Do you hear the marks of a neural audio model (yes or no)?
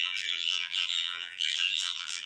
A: yes